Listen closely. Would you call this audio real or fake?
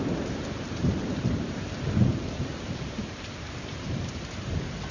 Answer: fake